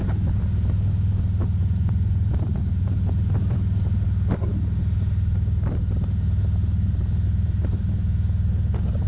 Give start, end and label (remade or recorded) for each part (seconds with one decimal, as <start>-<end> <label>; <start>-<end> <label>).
0.0-1.6 recorded; 1.6-3.1 remade; 3.1-9.1 recorded